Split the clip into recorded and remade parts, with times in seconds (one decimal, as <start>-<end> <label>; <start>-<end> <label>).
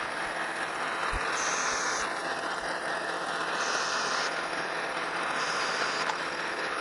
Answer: 0.0-2.2 recorded; 2.2-6.1 remade; 6.1-6.8 recorded